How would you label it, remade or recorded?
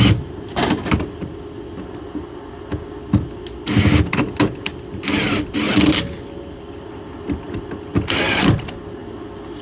recorded